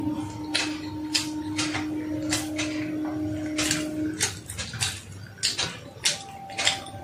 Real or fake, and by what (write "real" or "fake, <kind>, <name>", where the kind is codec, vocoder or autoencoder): real